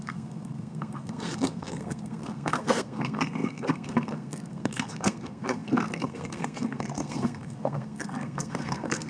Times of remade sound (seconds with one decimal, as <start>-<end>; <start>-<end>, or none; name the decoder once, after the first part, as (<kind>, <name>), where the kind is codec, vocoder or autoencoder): 0.0-9.1 (codec, SNAC)